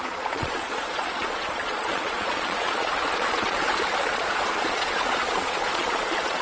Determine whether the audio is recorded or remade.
remade